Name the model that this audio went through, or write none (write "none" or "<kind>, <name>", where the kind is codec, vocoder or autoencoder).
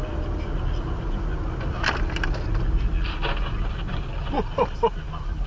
none